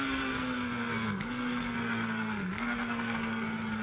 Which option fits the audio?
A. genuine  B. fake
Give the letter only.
B